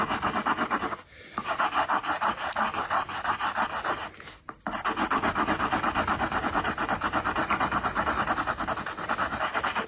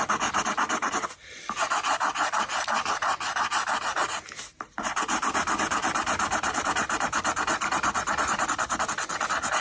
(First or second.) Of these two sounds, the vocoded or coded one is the second